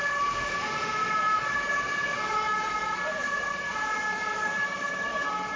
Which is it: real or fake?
fake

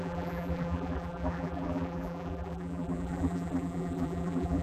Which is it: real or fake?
fake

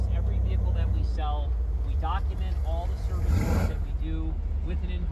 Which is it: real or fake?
real